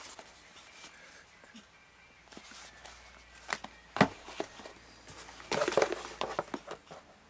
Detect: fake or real real